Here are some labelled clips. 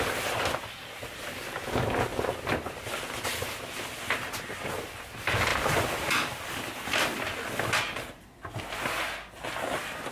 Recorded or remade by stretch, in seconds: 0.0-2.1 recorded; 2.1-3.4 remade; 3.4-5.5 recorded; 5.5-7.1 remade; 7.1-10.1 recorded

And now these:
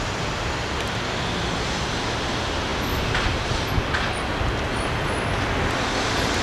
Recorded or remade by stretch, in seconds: 0.0-6.4 recorded

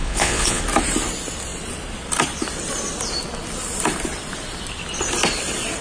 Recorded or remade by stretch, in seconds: 0.0-0.6 remade; 0.6-5.8 recorded

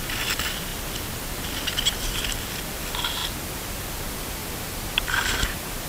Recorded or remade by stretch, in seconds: 0.0-4.4 recorded; 4.4-5.9 remade

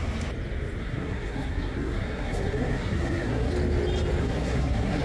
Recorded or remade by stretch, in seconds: 0.0-0.8 recorded; 0.8-3.5 remade; 3.5-4.2 recorded; 4.2-5.0 remade